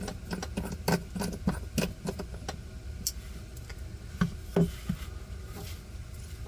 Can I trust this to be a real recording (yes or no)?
yes